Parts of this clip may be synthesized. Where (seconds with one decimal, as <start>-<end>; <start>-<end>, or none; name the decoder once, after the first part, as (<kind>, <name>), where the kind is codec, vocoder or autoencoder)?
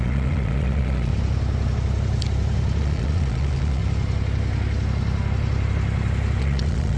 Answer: 0.0-1.1 (vocoder, Vocos); 2.8-3.8; 6.4-7.0